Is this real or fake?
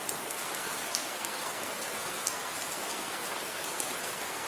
fake